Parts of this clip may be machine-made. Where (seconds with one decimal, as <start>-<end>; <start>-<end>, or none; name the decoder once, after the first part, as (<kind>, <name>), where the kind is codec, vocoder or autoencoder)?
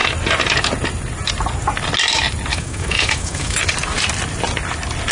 2.5-3.6 (autoencoder, DAC-VAE)